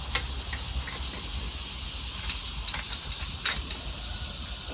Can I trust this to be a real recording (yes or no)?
yes